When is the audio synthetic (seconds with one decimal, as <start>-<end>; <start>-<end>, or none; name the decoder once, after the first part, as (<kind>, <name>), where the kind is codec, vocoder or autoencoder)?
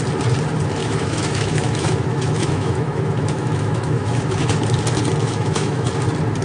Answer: 0.8-4.6 (autoencoder, DAC-VAE); 5.2-5.9